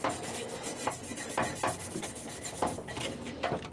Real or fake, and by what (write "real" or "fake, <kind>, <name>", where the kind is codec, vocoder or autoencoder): real